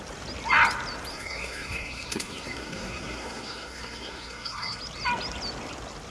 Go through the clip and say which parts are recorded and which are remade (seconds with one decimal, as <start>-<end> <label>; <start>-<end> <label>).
0.0-1.1 recorded; 1.1-4.8 remade; 4.8-6.1 recorded